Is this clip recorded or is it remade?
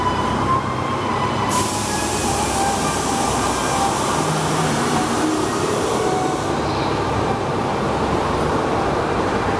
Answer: remade